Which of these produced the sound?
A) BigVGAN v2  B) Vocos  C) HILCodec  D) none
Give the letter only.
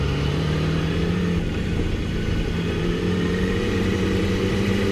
A